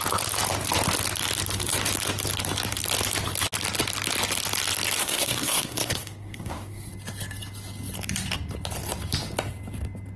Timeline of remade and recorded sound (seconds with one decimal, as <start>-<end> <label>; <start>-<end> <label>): 0.0-5.0 recorded; 5.0-6.9 remade; 6.9-10.2 recorded